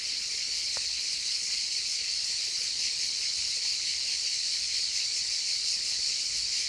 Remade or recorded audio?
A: remade